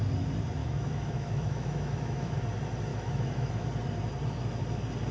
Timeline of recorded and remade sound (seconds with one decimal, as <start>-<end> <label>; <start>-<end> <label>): 0.0-0.6 recorded; 0.6-2.4 remade; 2.4-2.9 recorded; 2.9-3.5 remade; 3.5-5.1 recorded